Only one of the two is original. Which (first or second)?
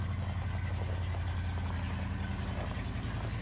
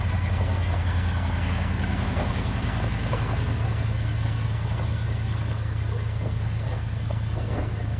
first